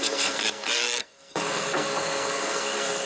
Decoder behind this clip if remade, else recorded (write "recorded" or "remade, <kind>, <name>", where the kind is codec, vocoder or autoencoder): remade, codec, SNAC